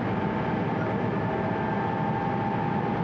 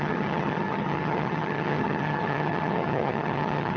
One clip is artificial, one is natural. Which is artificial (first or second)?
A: second